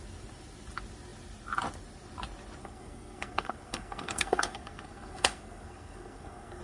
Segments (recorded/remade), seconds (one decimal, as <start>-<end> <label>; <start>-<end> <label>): 0.0-2.6 recorded; 2.6-6.6 remade